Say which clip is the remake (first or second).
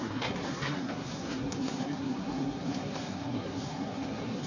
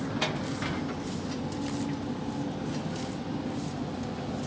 first